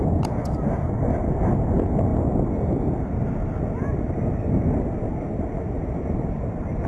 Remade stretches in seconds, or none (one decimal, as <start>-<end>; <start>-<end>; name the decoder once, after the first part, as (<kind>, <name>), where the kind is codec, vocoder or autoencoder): none